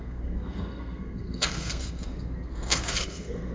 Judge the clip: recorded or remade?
remade